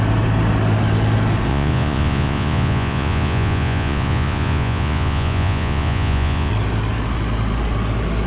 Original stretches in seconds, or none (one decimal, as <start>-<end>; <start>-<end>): 0.0-1.5; 6.5-8.3